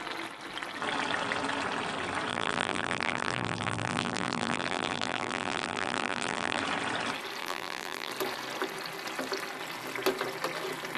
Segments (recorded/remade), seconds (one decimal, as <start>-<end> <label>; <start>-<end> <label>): 0.0-2.3 recorded; 2.3-6.6 remade; 6.6-7.4 recorded; 7.4-8.1 remade; 8.1-11.0 recorded